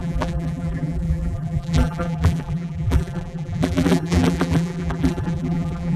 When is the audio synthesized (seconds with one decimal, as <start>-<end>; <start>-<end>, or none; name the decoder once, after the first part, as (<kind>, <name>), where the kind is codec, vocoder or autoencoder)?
0.0-6.0 (vocoder, BigVGAN v2)